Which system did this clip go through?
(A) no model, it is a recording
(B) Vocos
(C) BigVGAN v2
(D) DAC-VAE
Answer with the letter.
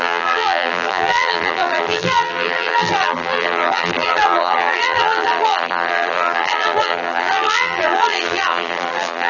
C